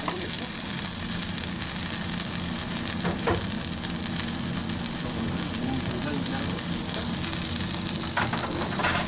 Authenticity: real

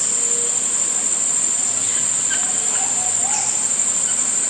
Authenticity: real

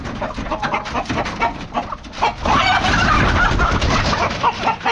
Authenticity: real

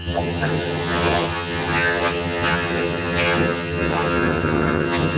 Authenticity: fake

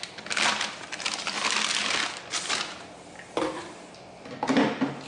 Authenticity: real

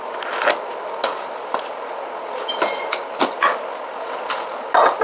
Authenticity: real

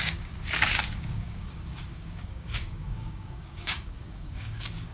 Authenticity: fake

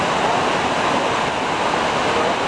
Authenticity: real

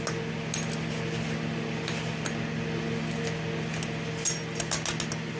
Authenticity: real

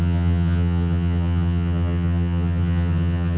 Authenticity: fake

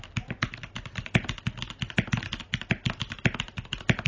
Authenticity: real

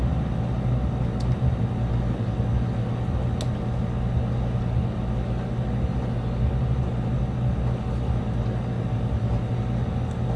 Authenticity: real